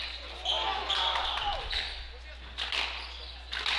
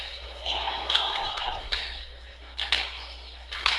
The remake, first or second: second